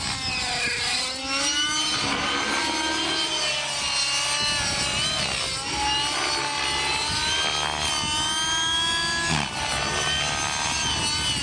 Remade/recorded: recorded